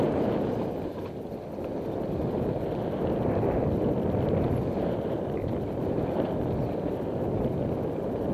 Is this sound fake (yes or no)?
no